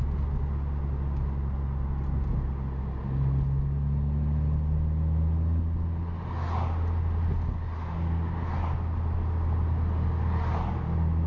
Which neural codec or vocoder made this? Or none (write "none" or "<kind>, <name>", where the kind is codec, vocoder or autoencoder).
none